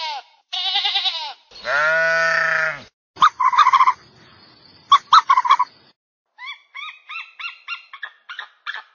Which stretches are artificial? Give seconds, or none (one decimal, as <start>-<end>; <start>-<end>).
none